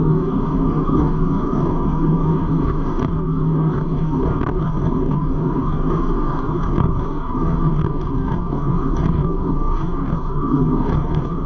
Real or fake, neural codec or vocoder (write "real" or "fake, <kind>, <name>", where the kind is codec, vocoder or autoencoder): fake, codec, DAC